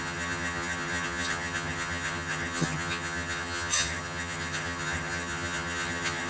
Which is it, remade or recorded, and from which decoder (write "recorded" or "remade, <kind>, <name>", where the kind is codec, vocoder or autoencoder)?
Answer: remade, vocoder, HiFi-GAN